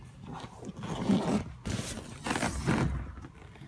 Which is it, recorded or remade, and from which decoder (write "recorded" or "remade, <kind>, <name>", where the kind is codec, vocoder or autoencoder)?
recorded